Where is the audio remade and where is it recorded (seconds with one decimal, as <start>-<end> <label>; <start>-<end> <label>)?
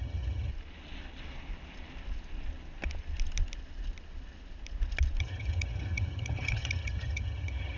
0.0-0.5 remade; 0.5-5.2 recorded; 5.2-7.8 remade